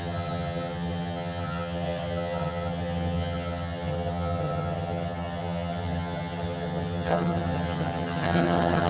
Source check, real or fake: fake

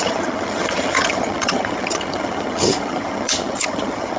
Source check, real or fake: fake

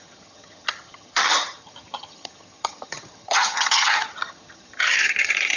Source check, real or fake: fake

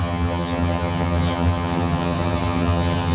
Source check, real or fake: fake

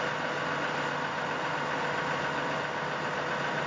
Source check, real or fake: real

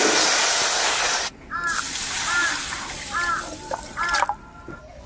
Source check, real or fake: real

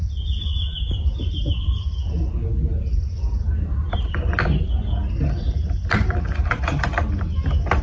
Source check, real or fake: real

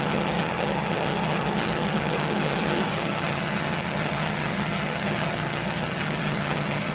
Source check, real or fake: fake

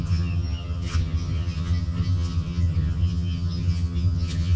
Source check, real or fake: fake